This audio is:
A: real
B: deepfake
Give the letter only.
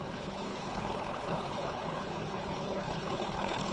B